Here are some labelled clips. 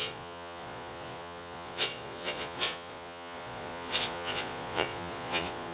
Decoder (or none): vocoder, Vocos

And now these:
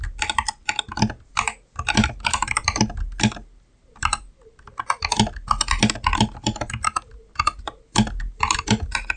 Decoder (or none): none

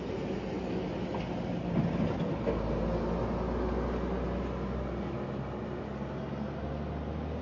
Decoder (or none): none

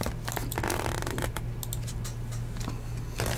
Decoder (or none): none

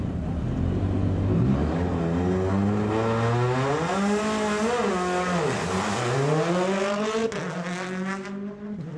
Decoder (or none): none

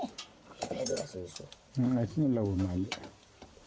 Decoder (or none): vocoder, BigVGAN v2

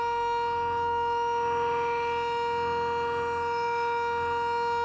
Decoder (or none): autoencoder, DAC-VAE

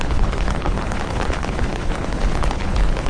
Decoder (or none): codec, HILCodec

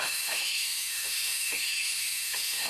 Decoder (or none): autoencoder, DAC-VAE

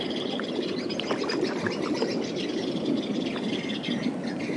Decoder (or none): none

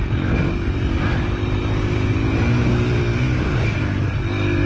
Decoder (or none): none